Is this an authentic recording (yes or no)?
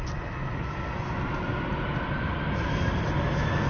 yes